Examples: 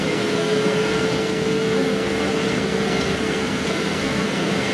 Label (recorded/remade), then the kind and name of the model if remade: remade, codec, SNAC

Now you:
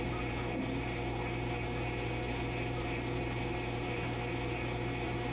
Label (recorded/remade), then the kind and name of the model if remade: recorded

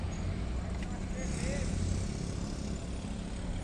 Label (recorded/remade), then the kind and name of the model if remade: recorded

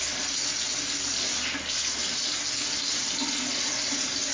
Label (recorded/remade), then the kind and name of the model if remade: recorded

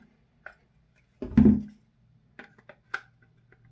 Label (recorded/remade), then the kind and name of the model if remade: recorded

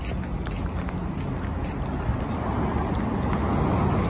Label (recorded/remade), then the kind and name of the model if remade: recorded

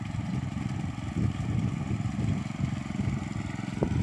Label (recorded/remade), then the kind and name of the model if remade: remade, vocoder, BigVGAN v2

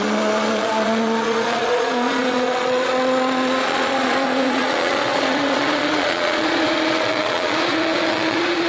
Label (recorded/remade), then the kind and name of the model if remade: remade, vocoder, Vocos